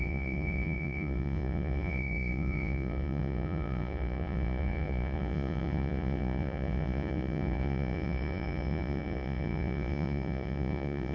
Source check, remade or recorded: remade